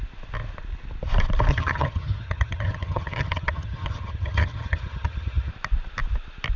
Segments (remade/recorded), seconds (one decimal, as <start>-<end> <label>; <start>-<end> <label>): 0.0-1.5 recorded; 1.5-5.5 remade; 5.5-6.6 recorded